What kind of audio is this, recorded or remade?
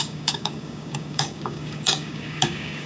remade